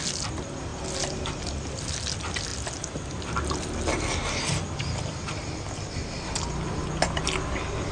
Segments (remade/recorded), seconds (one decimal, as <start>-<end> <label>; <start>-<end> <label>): 0.0-7.9 recorded